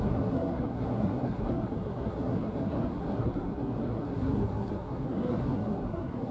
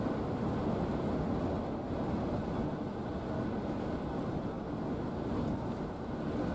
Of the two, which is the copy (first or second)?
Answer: first